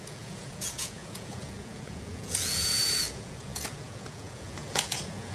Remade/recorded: remade